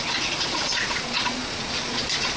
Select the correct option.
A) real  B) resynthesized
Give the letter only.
B